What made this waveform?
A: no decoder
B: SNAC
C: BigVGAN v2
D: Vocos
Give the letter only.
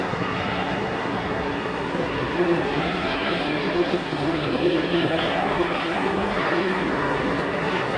B